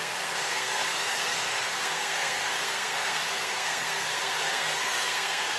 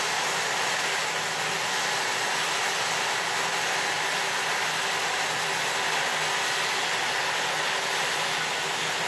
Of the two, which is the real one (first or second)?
second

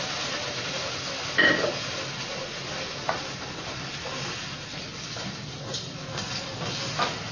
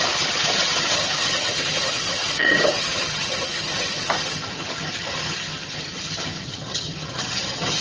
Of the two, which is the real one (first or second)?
first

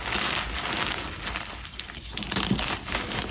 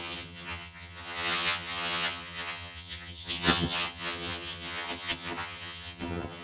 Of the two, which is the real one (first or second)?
first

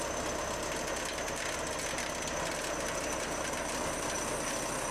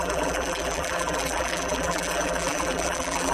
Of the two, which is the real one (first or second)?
first